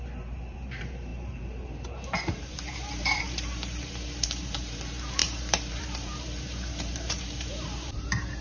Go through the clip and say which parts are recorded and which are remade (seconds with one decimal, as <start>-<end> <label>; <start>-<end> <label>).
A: 0.0-8.4 remade